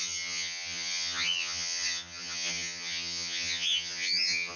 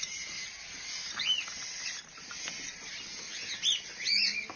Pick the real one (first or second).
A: second